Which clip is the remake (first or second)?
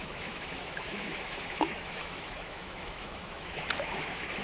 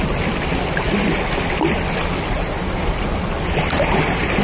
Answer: first